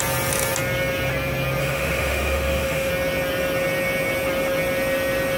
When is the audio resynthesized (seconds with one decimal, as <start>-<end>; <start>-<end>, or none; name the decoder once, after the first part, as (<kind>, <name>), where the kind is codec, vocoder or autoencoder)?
1.6-2.9 (autoencoder, DAC-VAE)